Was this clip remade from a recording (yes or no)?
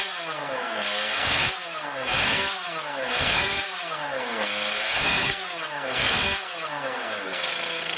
yes